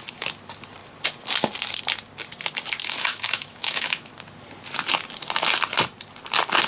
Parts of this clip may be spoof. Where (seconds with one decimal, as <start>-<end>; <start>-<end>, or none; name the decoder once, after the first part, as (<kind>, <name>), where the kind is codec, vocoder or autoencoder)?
2.8-4.1 (autoencoder, DAC-VAE)